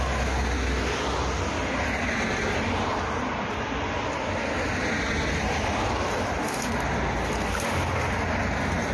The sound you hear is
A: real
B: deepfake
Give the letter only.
A